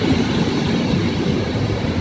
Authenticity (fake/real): real